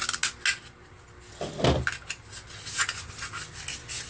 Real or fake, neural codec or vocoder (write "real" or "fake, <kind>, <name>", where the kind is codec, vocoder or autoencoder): real